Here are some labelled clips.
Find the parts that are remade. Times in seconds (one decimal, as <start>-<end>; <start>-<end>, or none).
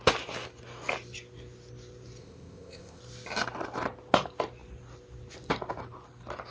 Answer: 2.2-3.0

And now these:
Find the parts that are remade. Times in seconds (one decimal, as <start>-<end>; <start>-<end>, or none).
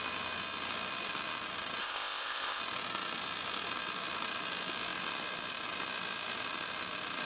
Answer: 1.8-2.6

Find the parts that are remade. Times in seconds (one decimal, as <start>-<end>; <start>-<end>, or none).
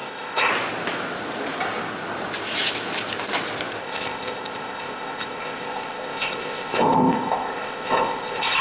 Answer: 0.0-0.5; 3.8-8.6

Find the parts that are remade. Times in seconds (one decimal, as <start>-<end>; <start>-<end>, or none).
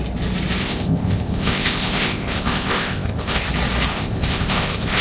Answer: 0.6-3.5; 3.9-5.0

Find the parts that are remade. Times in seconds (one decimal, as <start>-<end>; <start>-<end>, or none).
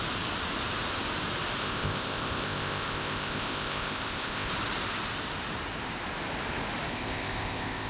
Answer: 1.6-4.5; 6.9-7.9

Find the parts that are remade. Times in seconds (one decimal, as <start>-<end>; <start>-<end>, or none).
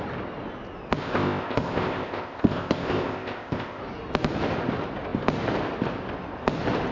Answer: 1.0-3.8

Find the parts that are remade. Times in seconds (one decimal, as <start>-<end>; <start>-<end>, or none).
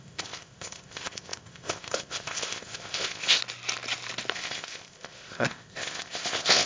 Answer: 0.0-3.4; 4.3-6.7